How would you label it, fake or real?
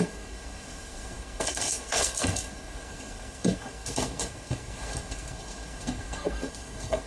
fake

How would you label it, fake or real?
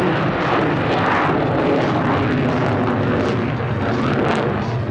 real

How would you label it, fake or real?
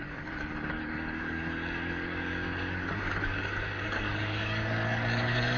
fake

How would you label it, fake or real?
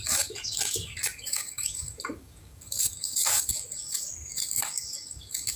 fake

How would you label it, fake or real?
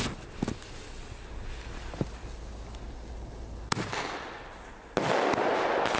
real